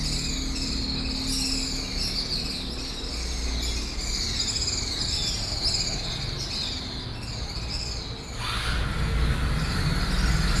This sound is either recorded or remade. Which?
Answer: recorded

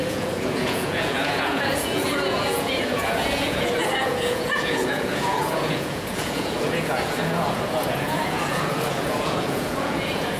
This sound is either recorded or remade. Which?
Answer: remade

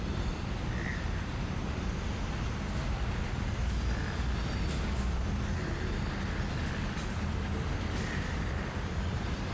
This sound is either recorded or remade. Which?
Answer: recorded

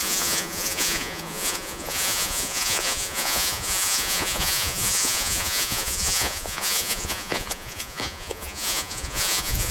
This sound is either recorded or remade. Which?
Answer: remade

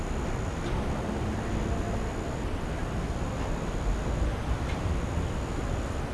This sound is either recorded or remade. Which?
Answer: recorded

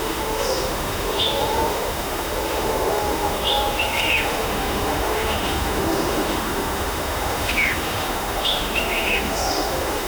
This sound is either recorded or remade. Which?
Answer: remade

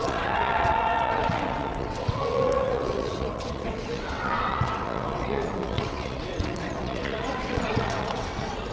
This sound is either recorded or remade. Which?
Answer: remade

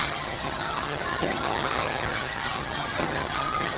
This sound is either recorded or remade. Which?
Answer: remade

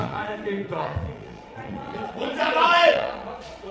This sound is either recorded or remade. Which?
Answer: remade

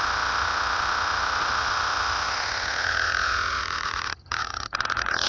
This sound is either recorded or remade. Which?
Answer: remade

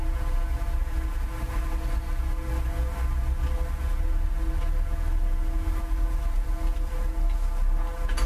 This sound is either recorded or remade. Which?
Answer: recorded